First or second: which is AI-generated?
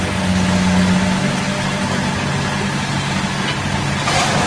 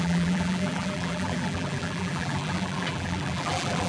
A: second